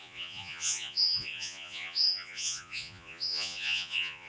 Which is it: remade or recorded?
remade